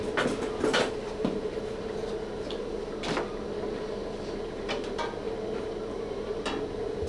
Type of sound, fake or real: real